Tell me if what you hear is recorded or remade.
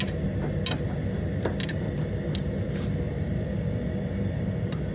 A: recorded